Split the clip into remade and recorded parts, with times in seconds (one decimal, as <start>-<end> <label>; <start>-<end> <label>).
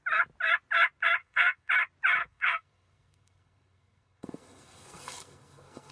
0.0-1.2 recorded; 1.2-1.7 remade; 1.7-2.2 recorded; 2.2-5.9 remade